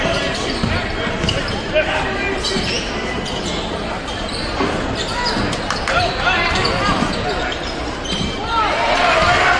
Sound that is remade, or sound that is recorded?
recorded